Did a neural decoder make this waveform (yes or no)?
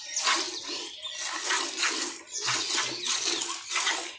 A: no